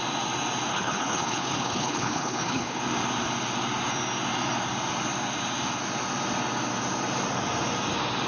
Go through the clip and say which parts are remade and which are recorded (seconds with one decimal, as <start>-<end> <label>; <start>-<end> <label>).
0.0-0.7 recorded; 0.7-2.8 remade; 2.8-8.3 recorded